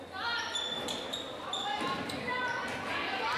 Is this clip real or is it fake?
real